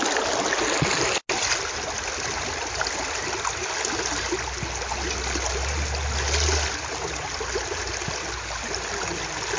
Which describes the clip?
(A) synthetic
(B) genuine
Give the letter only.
B